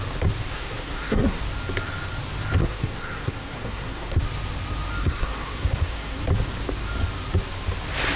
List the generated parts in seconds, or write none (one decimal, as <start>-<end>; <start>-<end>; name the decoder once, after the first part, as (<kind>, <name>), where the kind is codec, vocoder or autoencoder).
0.5-1.4 (codec, SNAC); 2.6-4.2; 5.0-6.2